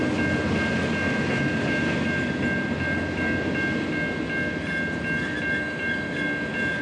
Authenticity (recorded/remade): recorded